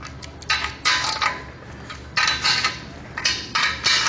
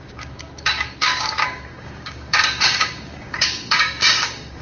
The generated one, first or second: second